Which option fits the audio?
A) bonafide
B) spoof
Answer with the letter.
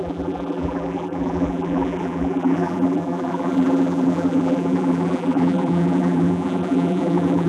B